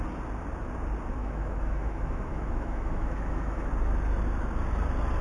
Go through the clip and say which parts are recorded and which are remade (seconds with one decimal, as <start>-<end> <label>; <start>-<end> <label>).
0.0-1.2 recorded; 1.2-3.7 remade; 3.7-5.2 recorded